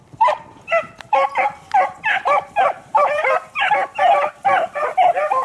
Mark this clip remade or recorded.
remade